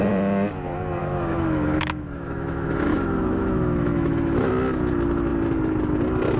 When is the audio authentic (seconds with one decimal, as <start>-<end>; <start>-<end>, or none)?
0.0-1.0; 4.5-6.4